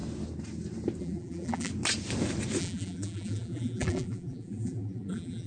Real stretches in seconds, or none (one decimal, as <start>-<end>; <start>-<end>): 0.0-1.0; 1.7-2.6